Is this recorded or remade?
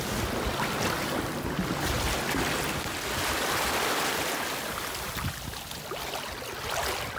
recorded